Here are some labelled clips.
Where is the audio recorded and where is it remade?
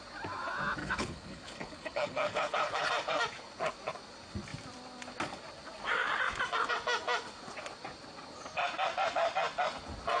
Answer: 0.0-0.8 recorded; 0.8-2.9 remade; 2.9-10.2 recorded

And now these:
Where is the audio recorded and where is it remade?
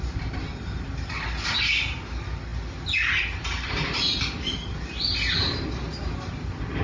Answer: 0.0-6.8 recorded